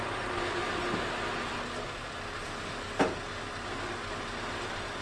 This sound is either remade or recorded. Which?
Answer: recorded